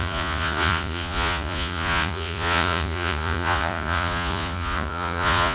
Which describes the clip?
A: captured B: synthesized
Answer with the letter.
B